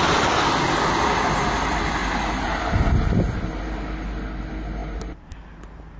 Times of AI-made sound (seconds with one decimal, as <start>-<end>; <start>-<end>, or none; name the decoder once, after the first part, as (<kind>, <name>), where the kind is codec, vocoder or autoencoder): none